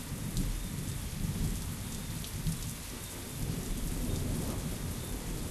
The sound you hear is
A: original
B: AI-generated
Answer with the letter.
A